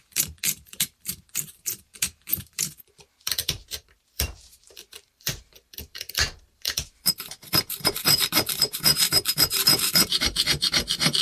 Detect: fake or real fake